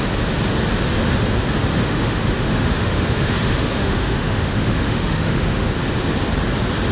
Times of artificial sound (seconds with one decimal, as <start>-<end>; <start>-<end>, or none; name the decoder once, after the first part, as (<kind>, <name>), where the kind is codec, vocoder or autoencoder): 1.8-5.7 (autoencoder, DAC-VAE)